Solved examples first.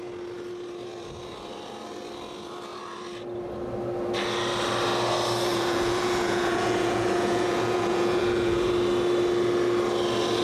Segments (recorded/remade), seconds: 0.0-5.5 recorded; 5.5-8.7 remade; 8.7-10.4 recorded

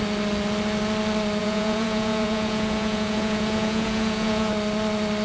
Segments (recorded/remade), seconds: 0.0-1.4 recorded; 1.4-4.5 remade; 4.5-5.2 recorded

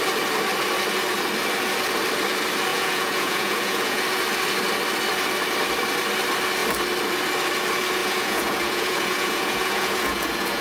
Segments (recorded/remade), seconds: 0.0-2.7 recorded; 2.7-4.0 remade; 4.0-8.0 recorded; 8.0-10.6 remade

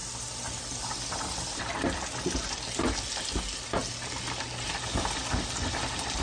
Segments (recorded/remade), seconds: 0.0-6.2 recorded

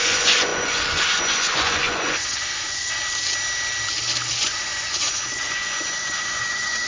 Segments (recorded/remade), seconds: 0.0-3.0 remade; 3.0-4.3 recorded; 4.3-6.9 remade

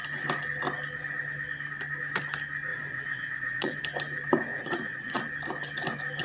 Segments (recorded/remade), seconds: 0.0-2.7 recorded; 2.7-3.8 remade; 3.8-4.5 recorded; 4.5-5.2 remade; 5.2-6.2 recorded